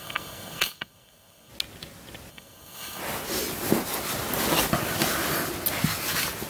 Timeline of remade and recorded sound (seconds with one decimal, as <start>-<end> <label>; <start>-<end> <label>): 0.0-1.5 remade; 1.5-2.3 recorded; 2.3-3.0 remade; 3.0-6.5 recorded